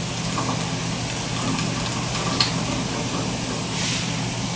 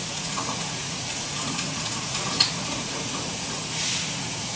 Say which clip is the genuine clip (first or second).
first